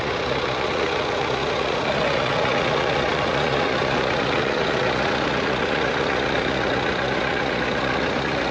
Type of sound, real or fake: fake